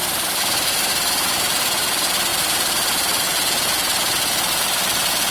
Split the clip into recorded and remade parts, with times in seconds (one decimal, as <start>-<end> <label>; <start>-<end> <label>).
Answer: 0.0-2.3 recorded; 2.3-4.5 remade; 4.5-5.3 recorded